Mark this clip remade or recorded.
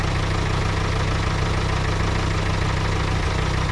recorded